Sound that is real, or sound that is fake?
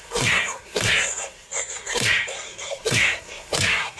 fake